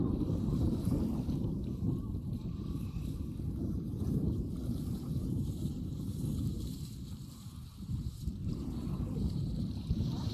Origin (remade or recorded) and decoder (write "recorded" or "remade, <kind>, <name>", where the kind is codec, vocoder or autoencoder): remade, vocoder, BigVGAN v2